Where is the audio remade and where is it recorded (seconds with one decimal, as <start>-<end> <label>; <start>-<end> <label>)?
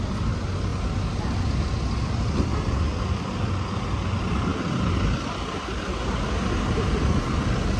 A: 0.0-7.8 recorded